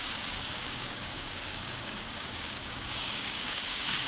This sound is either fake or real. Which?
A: fake